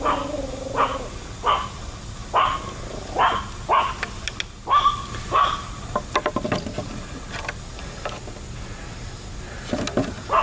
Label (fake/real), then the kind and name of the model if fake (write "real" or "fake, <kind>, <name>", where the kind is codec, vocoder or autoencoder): real